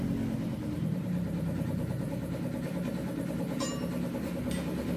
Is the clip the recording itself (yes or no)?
yes